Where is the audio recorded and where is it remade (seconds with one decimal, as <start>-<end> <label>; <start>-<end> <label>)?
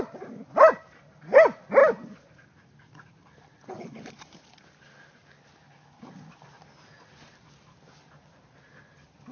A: 0.0-9.3 recorded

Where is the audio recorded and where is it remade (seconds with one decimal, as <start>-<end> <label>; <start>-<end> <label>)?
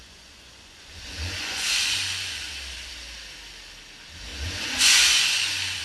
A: 0.0-2.5 remade; 2.5-4.3 recorded; 4.3-5.8 remade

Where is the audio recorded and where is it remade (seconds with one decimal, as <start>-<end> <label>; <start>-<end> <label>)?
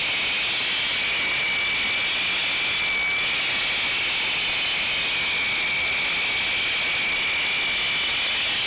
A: 0.0-8.7 recorded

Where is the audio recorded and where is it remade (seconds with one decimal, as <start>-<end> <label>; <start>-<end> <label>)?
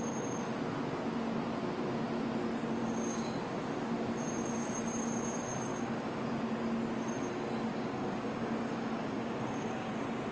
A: 0.0-2.8 recorded; 2.8-3.4 remade; 3.4-5.7 recorded; 5.7-6.2 remade; 6.2-7.7 recorded; 7.7-9.9 remade; 9.9-10.3 recorded